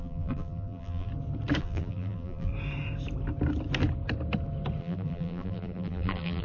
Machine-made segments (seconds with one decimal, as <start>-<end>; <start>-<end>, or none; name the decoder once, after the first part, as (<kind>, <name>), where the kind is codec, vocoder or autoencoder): 0.0-1.1 (vocoder, BigVGAN v2); 1.6-2.5; 4.8-6.4